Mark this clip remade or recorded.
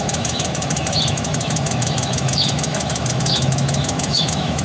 remade